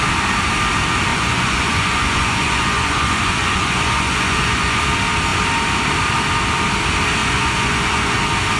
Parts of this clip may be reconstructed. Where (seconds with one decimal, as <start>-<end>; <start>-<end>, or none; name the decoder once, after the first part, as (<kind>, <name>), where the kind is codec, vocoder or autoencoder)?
1.1-4.8 (vocoder, Vocos); 7.2-8.2